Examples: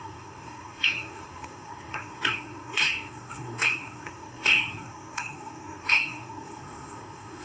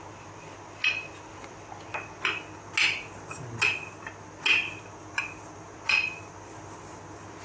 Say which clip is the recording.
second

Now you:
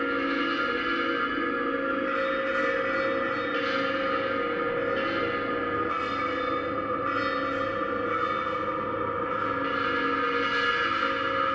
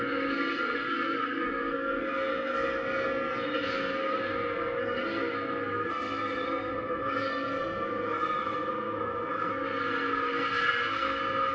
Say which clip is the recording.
first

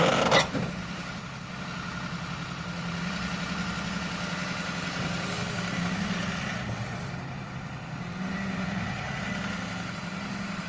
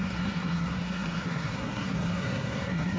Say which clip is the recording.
first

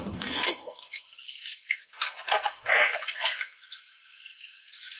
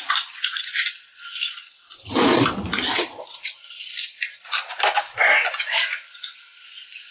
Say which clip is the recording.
second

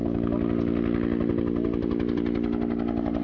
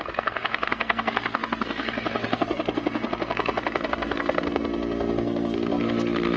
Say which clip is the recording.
first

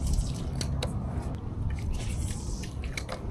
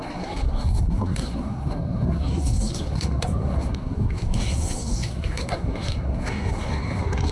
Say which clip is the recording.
first